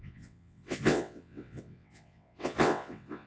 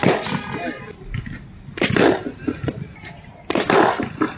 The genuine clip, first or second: second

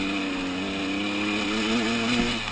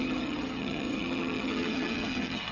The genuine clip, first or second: first